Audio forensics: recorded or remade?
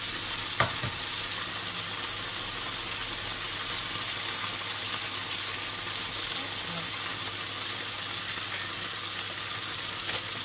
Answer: recorded